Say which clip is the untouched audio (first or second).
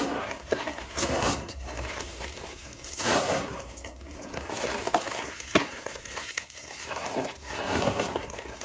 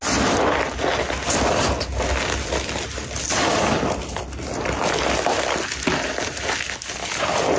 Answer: second